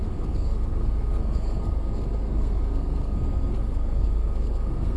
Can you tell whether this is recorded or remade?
remade